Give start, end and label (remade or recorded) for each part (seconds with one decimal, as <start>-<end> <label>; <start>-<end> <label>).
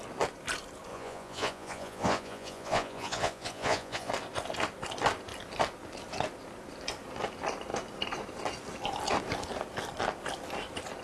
0.0-0.9 recorded; 0.9-4.1 remade; 4.1-11.0 recorded